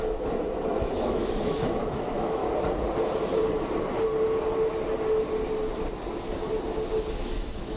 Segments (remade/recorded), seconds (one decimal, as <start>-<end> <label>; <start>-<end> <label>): 0.0-2.4 remade; 2.4-7.1 recorded; 7.1-7.8 remade